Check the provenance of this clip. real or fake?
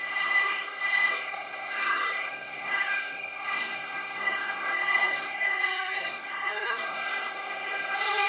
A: fake